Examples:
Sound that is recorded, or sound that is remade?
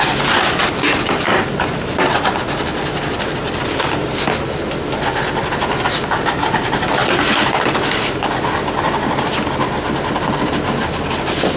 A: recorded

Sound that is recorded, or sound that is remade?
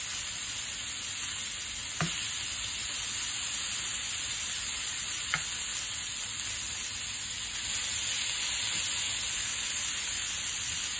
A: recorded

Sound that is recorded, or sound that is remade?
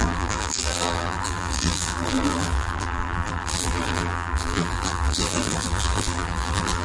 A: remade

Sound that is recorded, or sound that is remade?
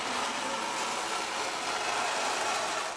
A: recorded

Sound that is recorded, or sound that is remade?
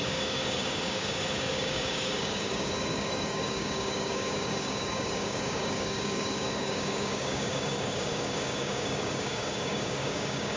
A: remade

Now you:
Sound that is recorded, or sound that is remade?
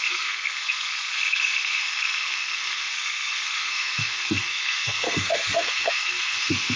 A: remade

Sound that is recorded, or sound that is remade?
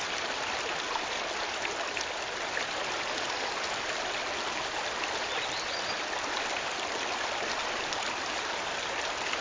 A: recorded